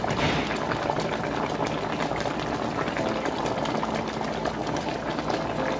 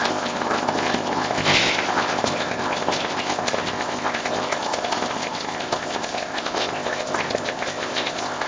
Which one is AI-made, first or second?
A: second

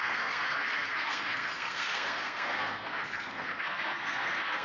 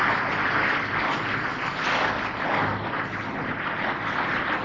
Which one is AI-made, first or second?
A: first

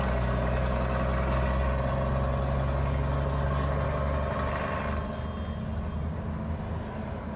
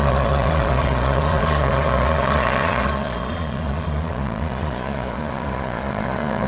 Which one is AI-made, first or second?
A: second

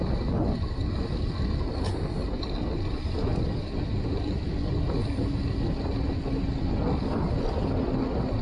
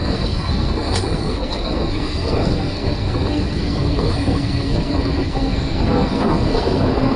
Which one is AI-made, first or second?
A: second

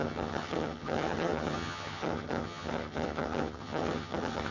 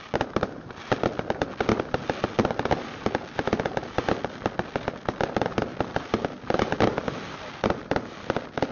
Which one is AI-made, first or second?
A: first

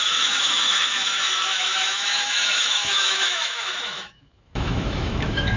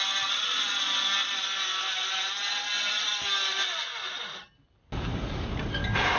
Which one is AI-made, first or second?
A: first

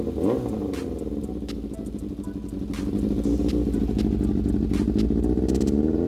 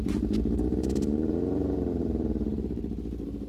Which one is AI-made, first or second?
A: second